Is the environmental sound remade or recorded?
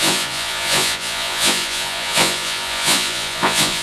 remade